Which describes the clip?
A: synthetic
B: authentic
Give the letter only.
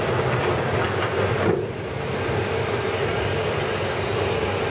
B